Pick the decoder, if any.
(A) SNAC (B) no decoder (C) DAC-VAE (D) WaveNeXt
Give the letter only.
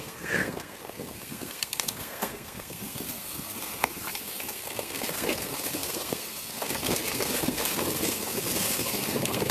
A